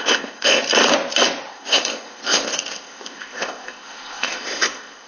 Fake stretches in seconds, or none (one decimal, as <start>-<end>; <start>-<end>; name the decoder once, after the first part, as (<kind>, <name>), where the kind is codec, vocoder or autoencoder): 0.0-0.6 (codec, ZipCodec); 1.5-5.1